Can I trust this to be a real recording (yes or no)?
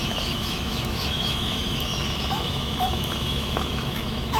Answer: no